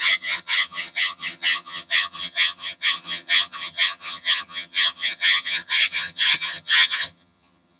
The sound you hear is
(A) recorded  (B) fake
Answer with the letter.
B